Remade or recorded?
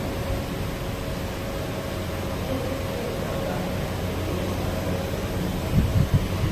recorded